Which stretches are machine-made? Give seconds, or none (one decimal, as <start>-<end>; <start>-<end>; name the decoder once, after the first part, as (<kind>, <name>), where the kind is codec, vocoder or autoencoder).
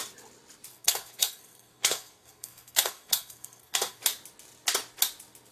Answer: 0.7-4.0 (codec, SNAC)